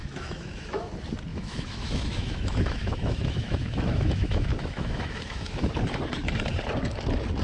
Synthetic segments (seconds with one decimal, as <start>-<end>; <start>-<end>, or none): 0.0-0.9; 1.3-5.7